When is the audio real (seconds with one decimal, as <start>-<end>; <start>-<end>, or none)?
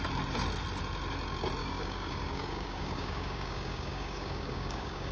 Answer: 0.0-1.6